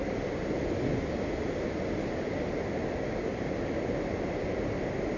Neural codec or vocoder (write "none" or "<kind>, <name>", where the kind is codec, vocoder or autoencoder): none